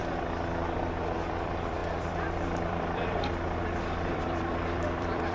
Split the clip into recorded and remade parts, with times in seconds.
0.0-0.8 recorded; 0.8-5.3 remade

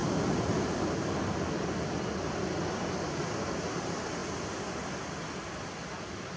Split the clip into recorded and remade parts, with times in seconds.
0.0-6.4 recorded